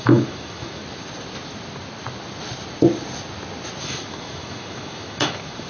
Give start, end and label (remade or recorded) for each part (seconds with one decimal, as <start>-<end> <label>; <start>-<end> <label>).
0.0-0.8 remade; 0.8-3.8 recorded; 3.8-5.7 remade